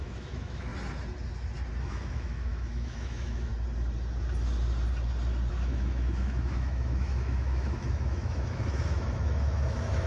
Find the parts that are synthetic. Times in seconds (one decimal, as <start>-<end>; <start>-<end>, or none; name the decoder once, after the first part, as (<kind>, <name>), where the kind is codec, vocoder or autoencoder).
0.0-0.7 (autoencoder, DAC-VAE); 1.8-3.5; 5.5-10.1